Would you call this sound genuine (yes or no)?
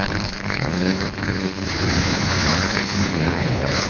no